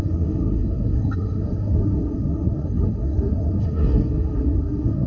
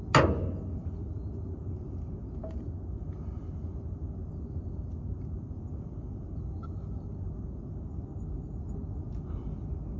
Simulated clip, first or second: first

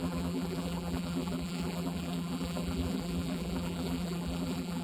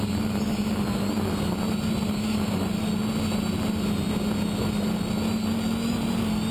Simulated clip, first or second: first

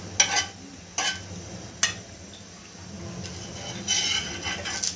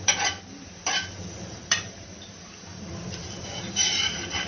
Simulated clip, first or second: second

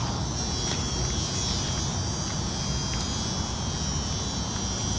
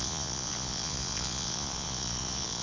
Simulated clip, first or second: second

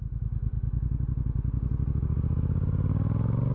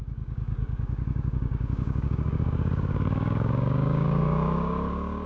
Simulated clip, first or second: second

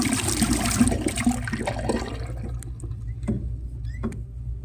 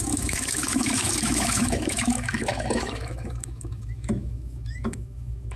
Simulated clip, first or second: second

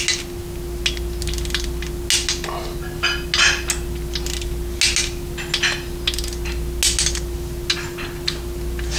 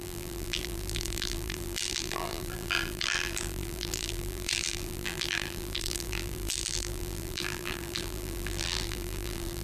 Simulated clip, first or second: second